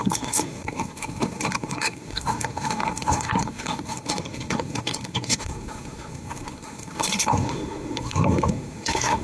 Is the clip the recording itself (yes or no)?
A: no